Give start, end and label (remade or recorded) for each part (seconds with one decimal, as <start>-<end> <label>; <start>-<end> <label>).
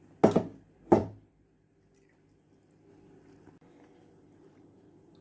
0.0-5.2 recorded